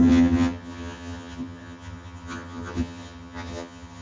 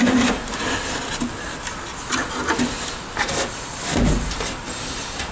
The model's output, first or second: first